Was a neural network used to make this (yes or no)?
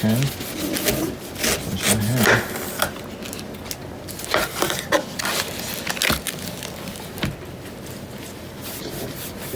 no